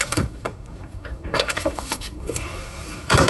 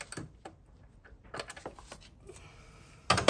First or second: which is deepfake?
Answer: first